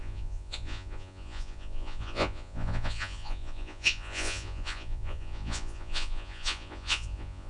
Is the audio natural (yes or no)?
no